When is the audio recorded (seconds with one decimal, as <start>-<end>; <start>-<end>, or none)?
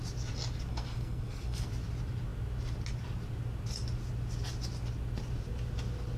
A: 0.0-0.7; 1.7-6.2